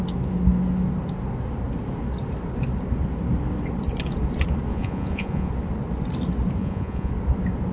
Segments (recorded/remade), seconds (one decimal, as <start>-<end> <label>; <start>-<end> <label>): 0.0-4.7 recorded; 4.7-5.5 remade; 5.5-6.6 recorded; 6.6-7.1 remade; 7.1-7.7 recorded